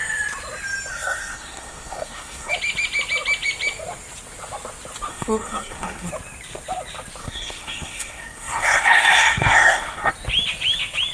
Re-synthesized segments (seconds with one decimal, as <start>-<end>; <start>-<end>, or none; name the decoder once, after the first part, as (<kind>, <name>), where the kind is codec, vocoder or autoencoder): 0.9-2.5 (codec, SNAC); 5.1-6.1; 7.2-10.1